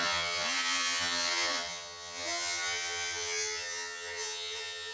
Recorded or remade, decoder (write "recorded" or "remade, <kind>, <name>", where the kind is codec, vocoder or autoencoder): remade, vocoder, HiFi-GAN